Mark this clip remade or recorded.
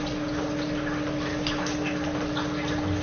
recorded